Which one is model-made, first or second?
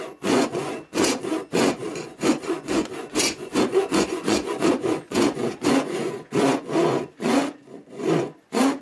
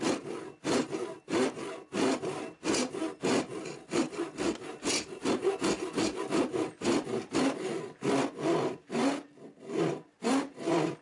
first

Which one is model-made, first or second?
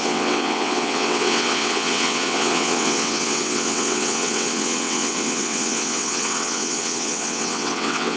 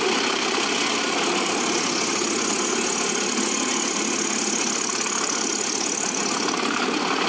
first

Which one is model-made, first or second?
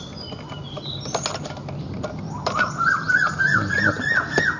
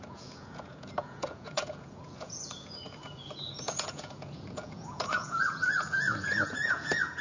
second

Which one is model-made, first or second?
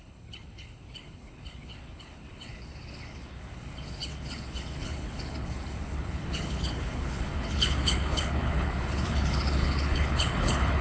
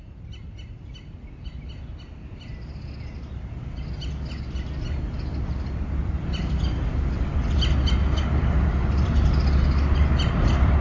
first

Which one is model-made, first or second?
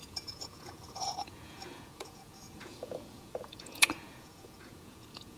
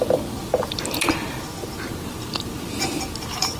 first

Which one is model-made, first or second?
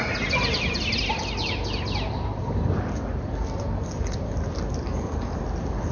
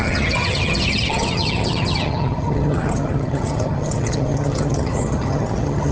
second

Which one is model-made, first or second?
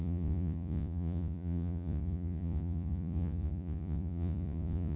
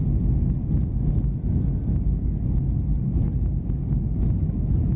first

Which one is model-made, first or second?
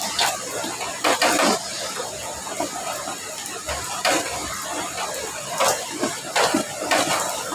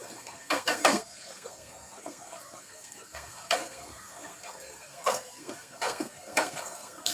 second